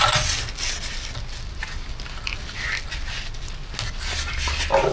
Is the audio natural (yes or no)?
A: yes